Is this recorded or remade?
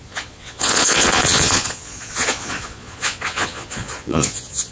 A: remade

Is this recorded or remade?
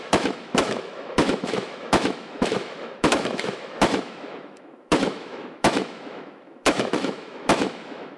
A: remade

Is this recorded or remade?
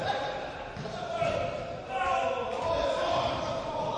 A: remade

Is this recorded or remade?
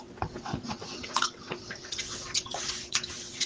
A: remade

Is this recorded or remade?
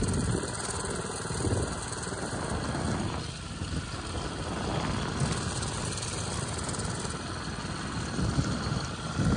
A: recorded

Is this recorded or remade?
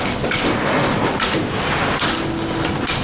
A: recorded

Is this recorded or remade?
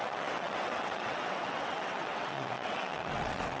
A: remade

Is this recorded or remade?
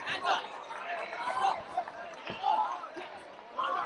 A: remade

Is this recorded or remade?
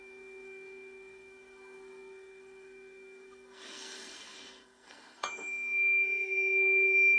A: remade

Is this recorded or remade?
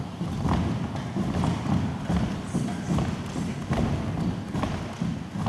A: recorded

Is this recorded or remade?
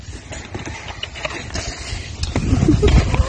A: recorded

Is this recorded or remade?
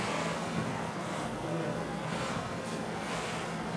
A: remade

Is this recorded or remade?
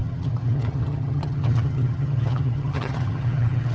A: remade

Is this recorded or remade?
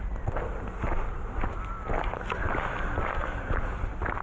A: recorded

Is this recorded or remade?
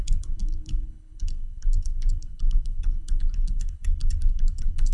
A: remade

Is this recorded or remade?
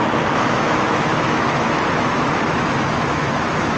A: remade